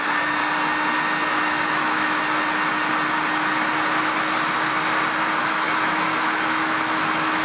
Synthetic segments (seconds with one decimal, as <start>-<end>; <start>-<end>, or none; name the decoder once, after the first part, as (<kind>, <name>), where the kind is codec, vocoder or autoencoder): 0.0-0.4 (autoencoder, DAC-VAE); 1.3-2.2; 5.4-7.4